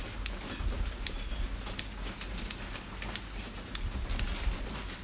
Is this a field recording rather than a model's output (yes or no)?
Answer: yes